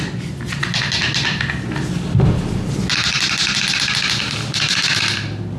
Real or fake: real